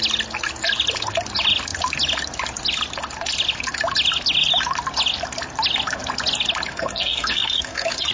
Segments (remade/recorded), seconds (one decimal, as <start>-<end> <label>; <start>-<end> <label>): 0.0-6.7 recorded; 6.7-8.1 remade